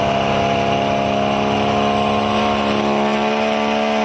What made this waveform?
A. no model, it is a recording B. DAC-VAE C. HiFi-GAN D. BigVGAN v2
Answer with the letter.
A